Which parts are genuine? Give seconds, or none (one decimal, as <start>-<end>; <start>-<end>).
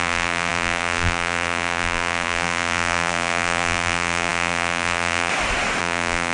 5.3-5.8